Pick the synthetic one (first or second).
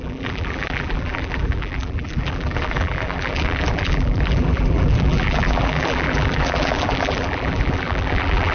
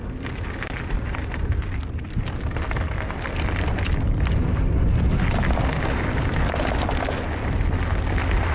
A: first